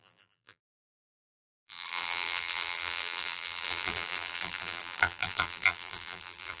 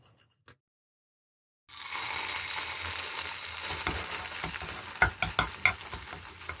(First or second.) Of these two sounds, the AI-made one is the first